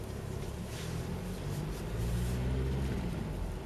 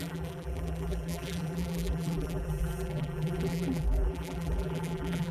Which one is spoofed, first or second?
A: second